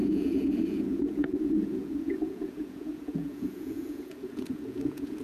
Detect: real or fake fake